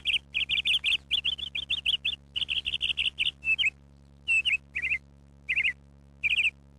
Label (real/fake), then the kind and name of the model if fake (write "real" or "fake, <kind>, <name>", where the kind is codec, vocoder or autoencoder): real